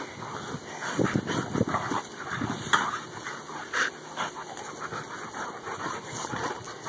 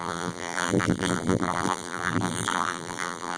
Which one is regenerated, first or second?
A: second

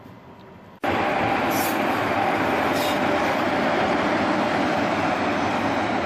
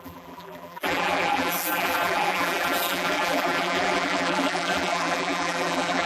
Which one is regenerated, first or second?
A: second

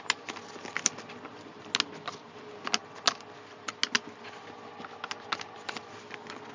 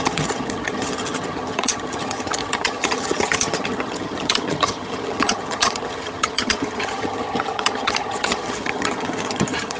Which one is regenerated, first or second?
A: second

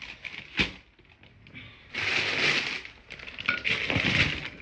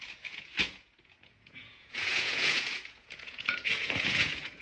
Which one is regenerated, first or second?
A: second